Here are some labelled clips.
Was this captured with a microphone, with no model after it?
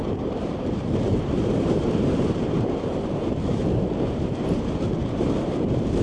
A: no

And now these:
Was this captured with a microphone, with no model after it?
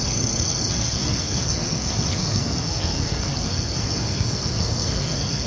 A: no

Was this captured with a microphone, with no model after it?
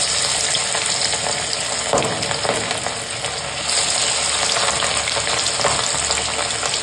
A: yes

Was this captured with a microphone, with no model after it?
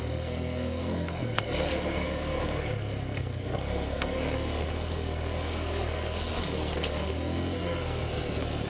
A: no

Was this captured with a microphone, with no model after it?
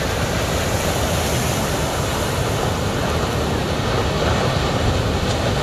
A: yes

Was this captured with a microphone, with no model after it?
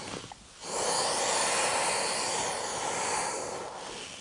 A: yes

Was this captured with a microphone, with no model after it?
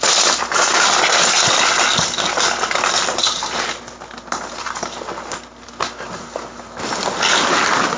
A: yes